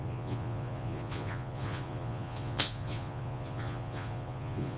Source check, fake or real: fake